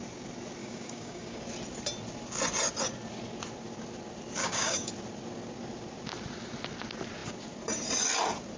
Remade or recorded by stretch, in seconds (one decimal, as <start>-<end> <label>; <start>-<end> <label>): 0.0-0.6 recorded; 0.6-1.4 remade; 1.4-4.4 recorded; 4.4-4.9 remade; 4.9-8.6 recorded